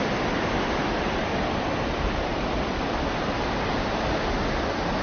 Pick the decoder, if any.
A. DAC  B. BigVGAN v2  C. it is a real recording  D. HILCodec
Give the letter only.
C